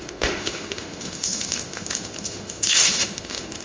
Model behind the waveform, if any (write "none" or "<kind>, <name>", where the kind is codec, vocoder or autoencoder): autoencoder, DAC-VAE